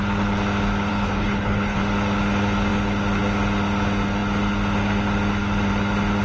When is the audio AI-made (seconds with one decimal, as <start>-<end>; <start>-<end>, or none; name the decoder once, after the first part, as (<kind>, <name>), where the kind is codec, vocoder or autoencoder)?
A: 0.9-1.8 (codec, HILCodec)